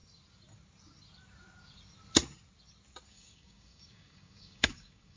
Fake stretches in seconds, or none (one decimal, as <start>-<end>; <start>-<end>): 3.1-5.2